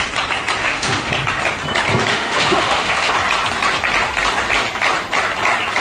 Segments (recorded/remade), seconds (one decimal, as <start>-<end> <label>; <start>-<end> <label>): 0.0-0.6 recorded; 0.6-1.1 remade; 1.1-2.1 recorded; 2.1-3.1 remade; 3.1-5.8 recorded